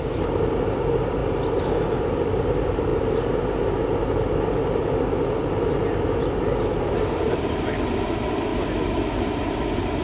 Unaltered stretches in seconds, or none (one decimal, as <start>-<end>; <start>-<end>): 1.2-2.0; 2.9-7.4